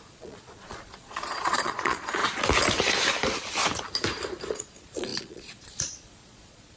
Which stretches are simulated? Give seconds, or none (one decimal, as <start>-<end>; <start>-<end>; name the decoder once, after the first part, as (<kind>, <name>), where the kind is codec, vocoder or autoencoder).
0.0-2.2 (vocoder, Vocos); 4.5-6.8